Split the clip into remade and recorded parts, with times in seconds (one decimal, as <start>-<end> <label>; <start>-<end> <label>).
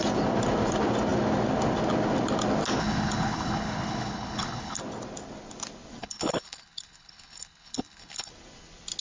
0.0-2.8 recorded; 2.8-4.8 remade; 4.8-6.0 recorded; 6.0-8.3 remade; 8.3-9.0 recorded